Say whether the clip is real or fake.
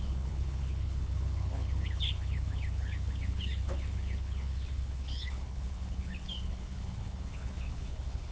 fake